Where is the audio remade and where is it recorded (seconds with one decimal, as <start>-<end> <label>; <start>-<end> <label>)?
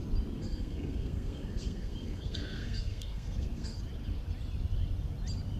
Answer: 0.0-0.4 recorded; 0.4-3.8 remade; 3.8-5.6 recorded